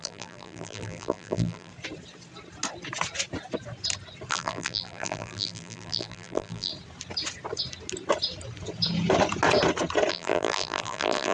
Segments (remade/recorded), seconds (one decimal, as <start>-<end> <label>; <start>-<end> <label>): 0.0-1.7 remade; 1.7-4.3 recorded; 4.3-6.7 remade; 6.7-10.1 recorded; 10.1-11.3 remade